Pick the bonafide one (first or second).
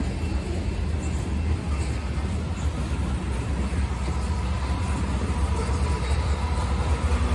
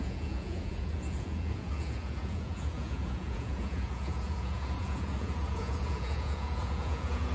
first